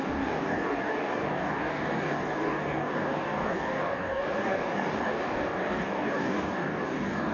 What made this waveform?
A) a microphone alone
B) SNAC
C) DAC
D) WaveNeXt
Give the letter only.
C